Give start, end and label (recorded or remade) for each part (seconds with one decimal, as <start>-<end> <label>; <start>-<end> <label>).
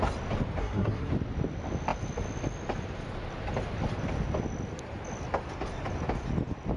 0.0-0.6 recorded; 0.6-1.1 remade; 1.1-6.8 recorded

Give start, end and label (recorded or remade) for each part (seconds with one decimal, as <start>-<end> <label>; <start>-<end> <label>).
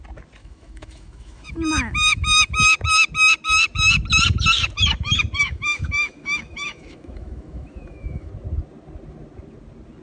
0.0-0.4 recorded; 0.4-2.5 remade; 2.5-5.4 recorded; 5.4-8.3 remade; 8.3-10.0 recorded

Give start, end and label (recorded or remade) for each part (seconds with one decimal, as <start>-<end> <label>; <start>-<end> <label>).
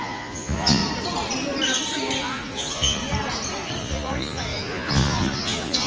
0.0-0.8 remade; 0.8-2.2 recorded; 2.2-3.0 remade; 3.0-3.8 recorded; 3.8-5.9 remade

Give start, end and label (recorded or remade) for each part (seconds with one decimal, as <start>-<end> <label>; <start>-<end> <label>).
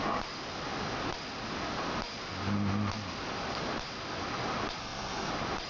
0.0-4.8 recorded; 4.8-5.3 remade; 5.3-5.7 recorded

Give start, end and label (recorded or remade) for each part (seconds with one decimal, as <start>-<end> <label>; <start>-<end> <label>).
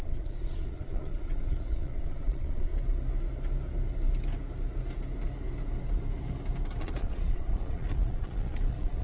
0.0-2.7 remade; 2.7-6.8 recorded; 6.8-9.0 remade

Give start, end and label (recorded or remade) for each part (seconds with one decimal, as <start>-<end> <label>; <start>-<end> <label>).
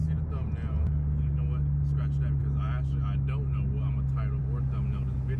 0.0-5.4 recorded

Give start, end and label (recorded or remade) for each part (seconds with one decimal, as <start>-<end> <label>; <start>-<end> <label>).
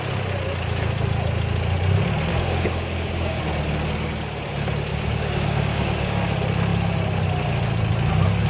0.0-2.3 recorded; 2.3-3.4 remade; 3.4-4.9 recorded; 4.9-6.3 remade; 6.3-8.5 recorded